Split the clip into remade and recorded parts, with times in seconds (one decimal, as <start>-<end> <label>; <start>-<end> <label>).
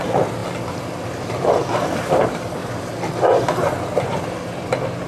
0.0-0.4 remade; 0.4-1.0 recorded; 1.0-2.6 remade; 2.6-5.1 recorded